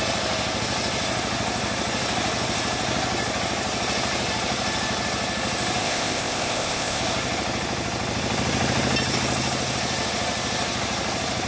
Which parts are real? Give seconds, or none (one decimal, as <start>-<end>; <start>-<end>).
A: 0.0-5.8; 7.0-11.5